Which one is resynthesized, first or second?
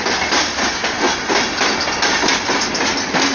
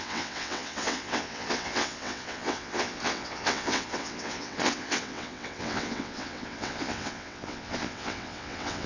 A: second